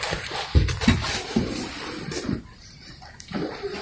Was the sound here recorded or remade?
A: remade